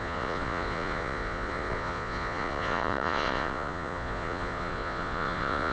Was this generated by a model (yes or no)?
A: yes